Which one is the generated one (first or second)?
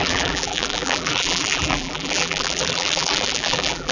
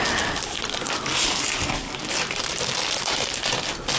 first